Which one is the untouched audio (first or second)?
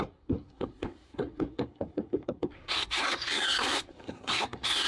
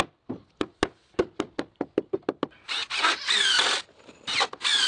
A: second